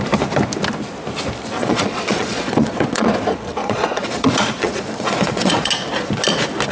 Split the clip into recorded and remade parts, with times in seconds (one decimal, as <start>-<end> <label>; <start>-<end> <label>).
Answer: 0.0-1.6 recorded; 1.6-3.1 remade; 3.1-3.6 recorded; 3.6-5.7 remade; 5.7-6.7 recorded